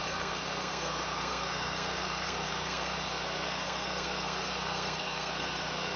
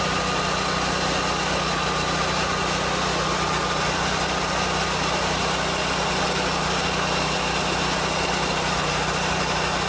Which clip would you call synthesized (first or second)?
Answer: first